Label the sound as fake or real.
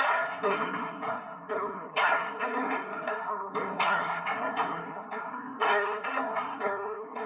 fake